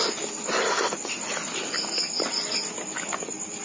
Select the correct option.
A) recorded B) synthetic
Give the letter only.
A